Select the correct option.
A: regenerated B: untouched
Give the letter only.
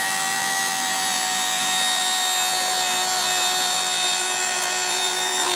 A